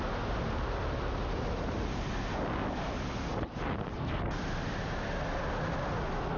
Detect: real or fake real